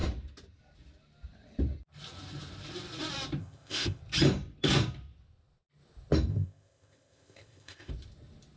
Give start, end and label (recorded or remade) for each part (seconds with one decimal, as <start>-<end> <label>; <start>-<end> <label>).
0.0-3.4 recorded; 3.4-4.0 remade; 4.0-6.3 recorded; 6.3-7.9 remade; 7.9-8.6 recorded